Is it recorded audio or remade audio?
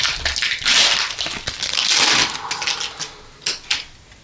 recorded